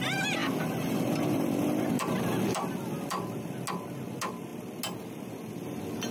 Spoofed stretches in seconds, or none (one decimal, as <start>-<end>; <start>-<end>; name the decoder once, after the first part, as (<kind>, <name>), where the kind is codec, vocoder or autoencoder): none